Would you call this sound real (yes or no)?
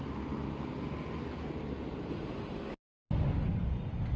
yes